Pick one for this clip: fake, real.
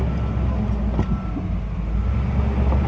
real